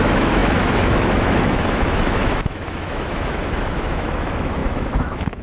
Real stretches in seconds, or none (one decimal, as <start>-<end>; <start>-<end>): none